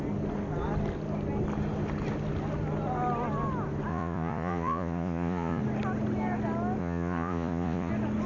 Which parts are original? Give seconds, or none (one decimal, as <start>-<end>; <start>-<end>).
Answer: 0.0-3.9; 5.6-6.8; 7.9-8.3